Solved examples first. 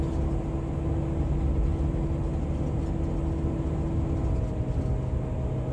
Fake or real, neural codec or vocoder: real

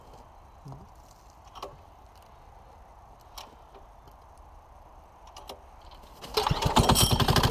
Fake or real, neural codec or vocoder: real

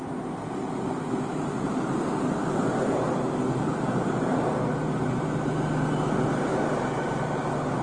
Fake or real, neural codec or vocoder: real